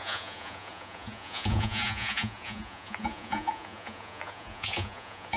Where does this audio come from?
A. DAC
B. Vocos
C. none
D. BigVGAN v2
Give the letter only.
B